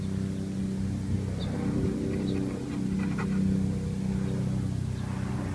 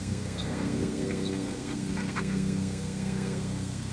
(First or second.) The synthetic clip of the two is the second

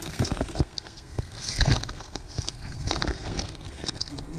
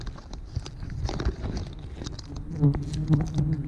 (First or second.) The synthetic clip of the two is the first